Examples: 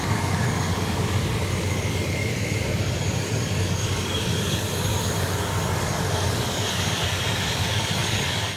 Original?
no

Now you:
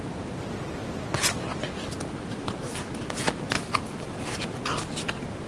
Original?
yes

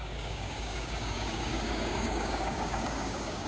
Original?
no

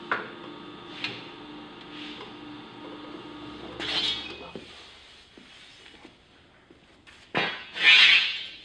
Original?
yes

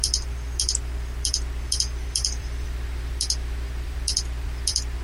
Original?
no